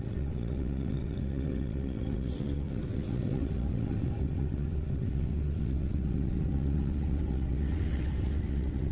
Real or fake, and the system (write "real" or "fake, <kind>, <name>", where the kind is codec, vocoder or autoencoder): fake, vocoder, WaveNeXt